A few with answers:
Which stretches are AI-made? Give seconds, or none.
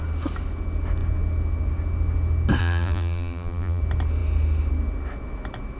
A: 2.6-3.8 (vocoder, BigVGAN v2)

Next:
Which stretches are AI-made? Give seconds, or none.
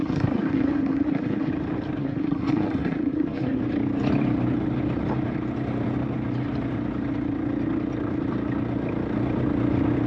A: 0.0-1.5 (codec, SNAC); 2.0-3.6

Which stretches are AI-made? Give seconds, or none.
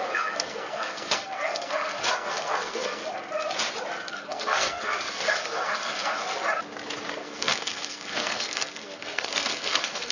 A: 0.0-3.0 (codec, SNAC); 4.1-6.3; 7.1-10.1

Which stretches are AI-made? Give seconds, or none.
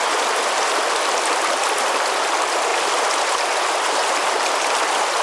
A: none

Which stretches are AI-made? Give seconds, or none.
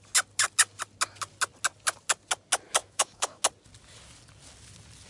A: 2.8-3.4 (autoencoder, DAC-VAE)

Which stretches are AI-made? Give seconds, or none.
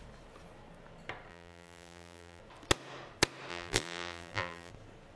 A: 1.3-2.4 (vocoder, BigVGAN v2); 3.5-4.7